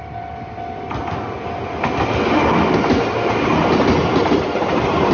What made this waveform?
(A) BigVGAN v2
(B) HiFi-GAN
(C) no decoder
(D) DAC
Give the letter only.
C